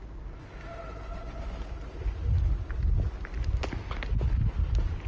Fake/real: real